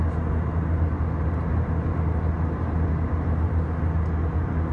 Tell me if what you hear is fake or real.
real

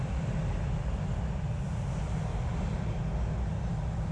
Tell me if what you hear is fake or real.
real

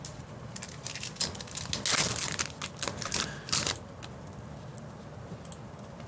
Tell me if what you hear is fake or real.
real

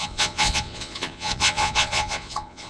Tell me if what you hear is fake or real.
fake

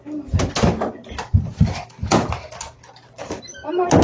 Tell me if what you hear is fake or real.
real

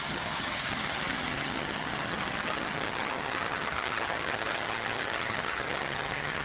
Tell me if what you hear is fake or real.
fake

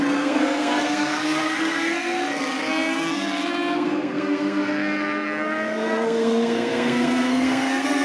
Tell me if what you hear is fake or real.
fake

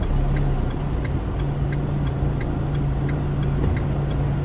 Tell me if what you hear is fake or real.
real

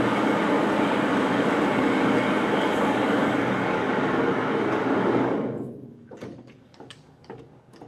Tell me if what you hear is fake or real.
fake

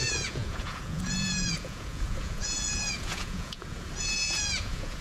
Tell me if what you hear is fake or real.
fake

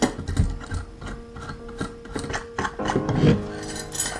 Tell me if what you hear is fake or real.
real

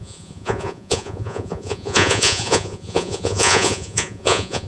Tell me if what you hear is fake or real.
fake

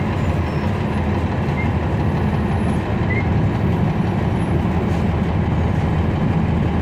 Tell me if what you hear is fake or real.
real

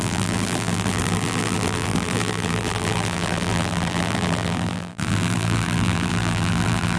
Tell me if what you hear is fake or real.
fake